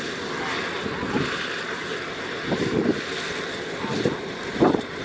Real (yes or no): yes